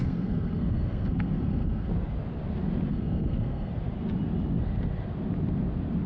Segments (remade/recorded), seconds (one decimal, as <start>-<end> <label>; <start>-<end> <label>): 0.0-1.9 remade; 1.9-2.9 recorded; 2.9-3.7 remade; 3.7-6.1 recorded